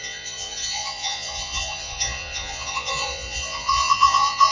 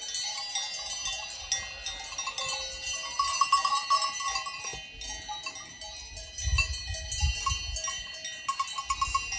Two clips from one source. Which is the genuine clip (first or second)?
second